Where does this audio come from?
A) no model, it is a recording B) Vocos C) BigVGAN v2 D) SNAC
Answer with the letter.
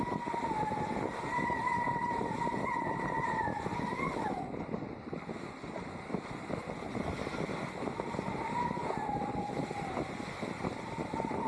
A